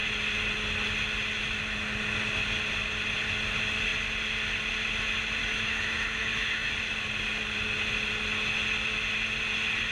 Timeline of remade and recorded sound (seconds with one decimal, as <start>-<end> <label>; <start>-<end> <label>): 0.0-5.4 recorded; 5.4-6.7 remade; 6.7-9.9 recorded